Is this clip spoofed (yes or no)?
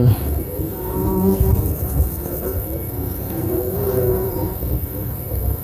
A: yes